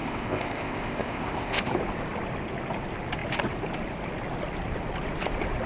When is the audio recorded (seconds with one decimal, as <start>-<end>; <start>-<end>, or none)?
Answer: 1.6-5.7